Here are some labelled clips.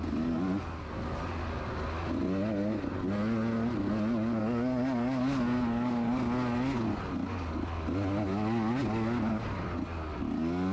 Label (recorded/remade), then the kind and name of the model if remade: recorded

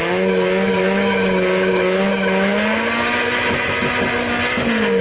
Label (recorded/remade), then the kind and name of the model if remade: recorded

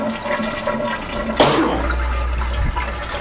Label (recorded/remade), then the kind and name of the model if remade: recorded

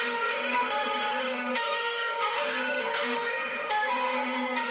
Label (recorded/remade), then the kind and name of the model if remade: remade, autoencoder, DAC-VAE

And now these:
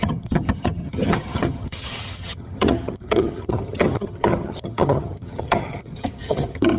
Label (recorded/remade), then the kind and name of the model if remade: remade, vocoder, HiFi-GAN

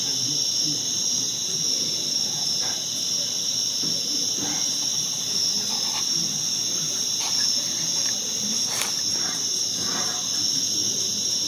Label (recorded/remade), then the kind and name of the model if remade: recorded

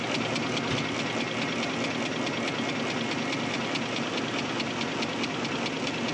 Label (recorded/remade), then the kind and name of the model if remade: recorded